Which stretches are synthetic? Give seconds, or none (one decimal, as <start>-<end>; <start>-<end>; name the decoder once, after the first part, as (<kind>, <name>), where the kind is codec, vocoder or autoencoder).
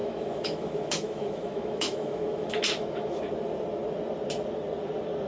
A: 0.0-3.2 (autoencoder, DAC-VAE)